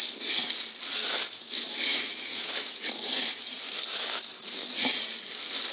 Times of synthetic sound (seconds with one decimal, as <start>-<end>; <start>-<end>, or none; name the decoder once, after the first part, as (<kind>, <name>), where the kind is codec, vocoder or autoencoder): 1.0-2.9 (autoencoder, DAC-VAE); 3.9-4.9